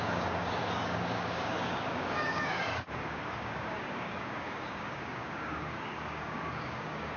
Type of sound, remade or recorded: remade